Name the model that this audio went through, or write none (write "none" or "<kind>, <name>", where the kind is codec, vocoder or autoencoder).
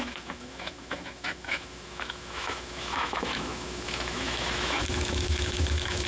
autoencoder, DAC-VAE